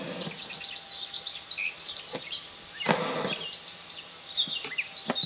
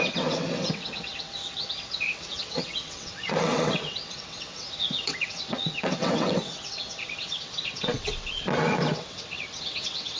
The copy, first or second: second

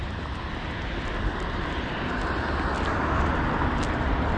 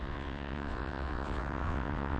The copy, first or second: second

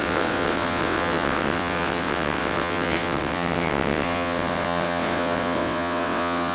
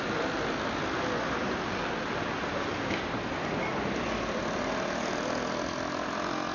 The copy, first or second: first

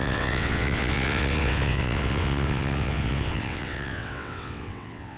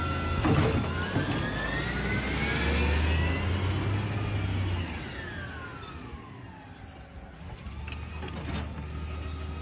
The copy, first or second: first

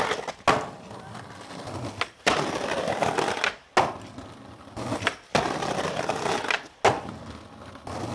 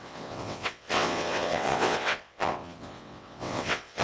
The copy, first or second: second